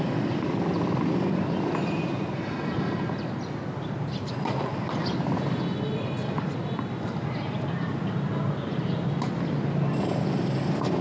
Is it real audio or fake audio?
real